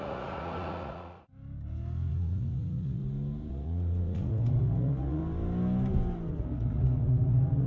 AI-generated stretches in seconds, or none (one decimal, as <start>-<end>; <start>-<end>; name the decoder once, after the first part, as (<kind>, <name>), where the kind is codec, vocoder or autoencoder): 0.0-1.3 (vocoder, Vocos); 2.1-3.0; 3.5-5.2; 6.3-7.7